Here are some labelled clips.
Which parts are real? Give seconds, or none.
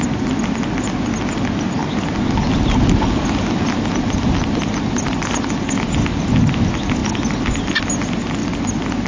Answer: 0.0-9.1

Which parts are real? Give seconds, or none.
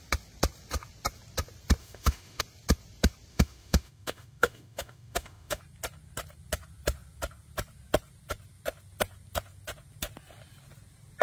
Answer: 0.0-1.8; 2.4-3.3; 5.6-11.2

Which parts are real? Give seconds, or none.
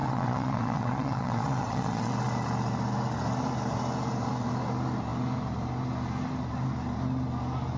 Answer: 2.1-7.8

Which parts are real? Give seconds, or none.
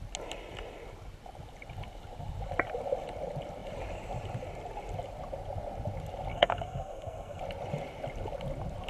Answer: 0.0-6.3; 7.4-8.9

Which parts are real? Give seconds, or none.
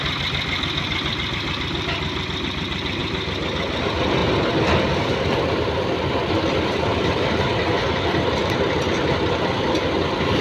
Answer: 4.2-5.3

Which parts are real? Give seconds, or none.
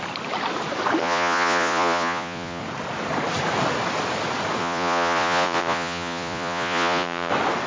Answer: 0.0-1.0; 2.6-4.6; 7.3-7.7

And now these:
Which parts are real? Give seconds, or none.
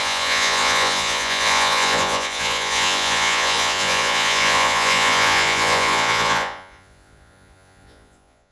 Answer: none